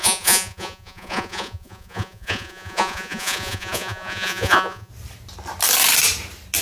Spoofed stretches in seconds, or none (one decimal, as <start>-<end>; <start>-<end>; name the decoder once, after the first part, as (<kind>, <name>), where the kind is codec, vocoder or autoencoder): 0.0-4.9 (vocoder, Vocos)